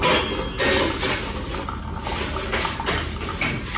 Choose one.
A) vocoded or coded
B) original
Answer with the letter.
B